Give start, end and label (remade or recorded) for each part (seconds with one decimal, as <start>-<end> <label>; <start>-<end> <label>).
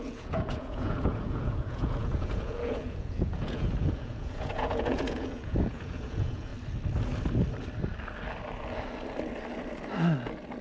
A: 0.0-6.5 remade; 6.5-10.6 recorded